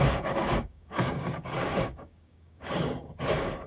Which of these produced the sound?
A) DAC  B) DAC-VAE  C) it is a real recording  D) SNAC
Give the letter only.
A